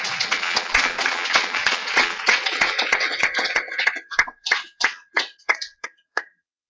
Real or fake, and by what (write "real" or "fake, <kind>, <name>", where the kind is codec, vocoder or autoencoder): fake, vocoder, WaveNeXt